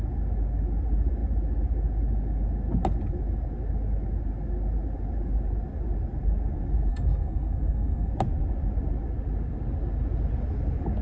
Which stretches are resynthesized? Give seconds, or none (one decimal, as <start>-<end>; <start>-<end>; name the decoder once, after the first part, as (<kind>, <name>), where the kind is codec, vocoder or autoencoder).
6.9-8.1 (codec, SNAC)